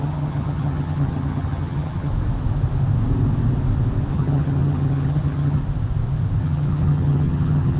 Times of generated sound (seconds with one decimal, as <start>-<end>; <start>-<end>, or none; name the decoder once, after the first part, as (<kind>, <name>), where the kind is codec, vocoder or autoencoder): 0.0-2.1 (vocoder, HiFi-GAN); 4.1-5.6; 6.4-7.8